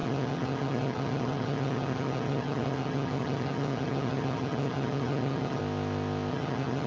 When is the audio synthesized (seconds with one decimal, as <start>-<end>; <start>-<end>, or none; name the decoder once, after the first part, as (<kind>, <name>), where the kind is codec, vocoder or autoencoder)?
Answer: 0.0-5.6 (vocoder, HiFi-GAN); 6.3-6.9